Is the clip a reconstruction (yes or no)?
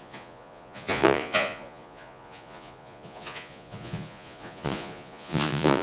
yes